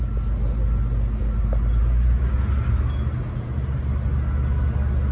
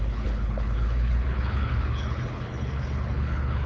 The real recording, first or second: first